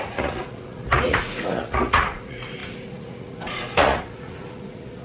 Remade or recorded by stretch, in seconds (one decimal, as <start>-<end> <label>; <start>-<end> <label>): 0.0-5.0 remade